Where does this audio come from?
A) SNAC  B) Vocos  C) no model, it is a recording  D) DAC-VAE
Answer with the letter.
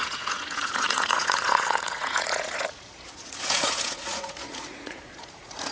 B